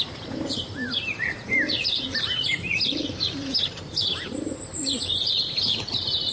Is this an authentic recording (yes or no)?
no